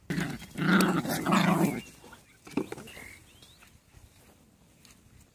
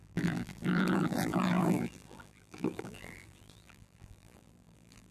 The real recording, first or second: first